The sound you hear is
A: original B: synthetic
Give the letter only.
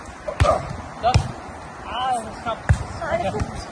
A